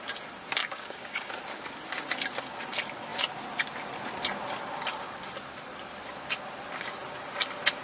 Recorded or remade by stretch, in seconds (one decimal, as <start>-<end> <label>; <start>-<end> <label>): 0.0-0.6 recorded; 0.6-1.3 remade; 1.3-7.8 recorded